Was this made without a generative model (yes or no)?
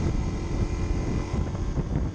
yes